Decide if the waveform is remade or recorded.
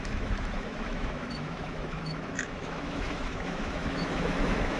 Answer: remade